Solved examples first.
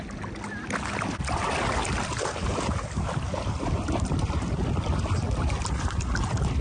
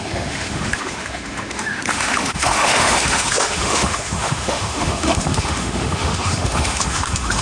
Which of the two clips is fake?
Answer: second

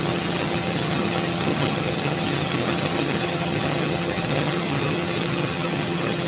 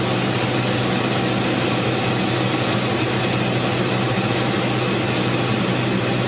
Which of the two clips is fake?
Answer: first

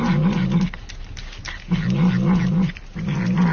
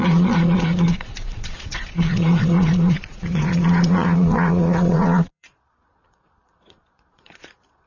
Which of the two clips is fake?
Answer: second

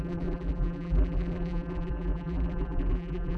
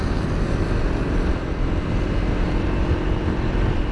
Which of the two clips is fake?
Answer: first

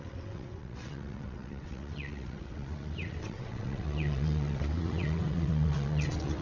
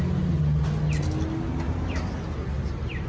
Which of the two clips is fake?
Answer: first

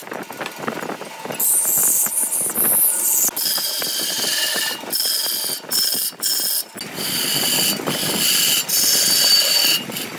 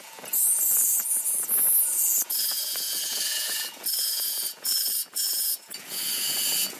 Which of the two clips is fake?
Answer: second